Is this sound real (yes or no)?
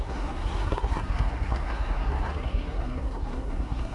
no